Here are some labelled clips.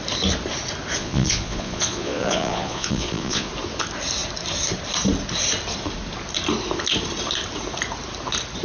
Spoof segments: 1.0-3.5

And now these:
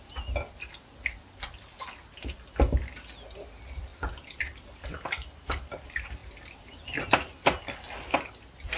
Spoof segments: 3.9-5.8

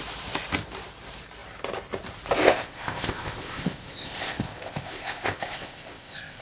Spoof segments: 2.4-6.4

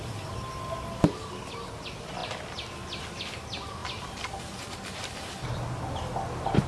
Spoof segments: none

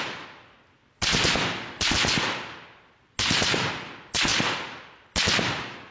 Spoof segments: none

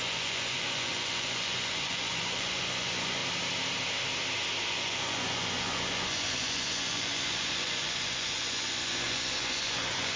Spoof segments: 0.0-3.2; 4.7-10.2

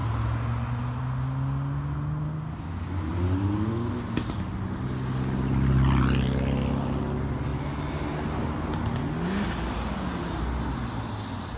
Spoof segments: none

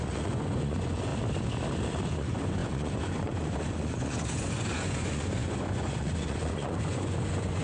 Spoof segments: 0.0-1.1; 2.1-7.6